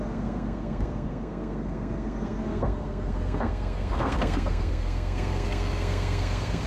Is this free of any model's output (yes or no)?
no